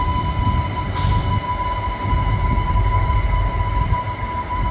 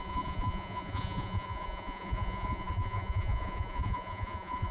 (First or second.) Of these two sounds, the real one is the first